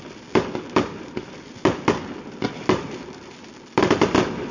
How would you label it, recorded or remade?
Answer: recorded